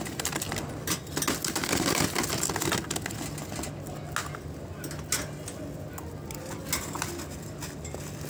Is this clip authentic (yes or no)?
yes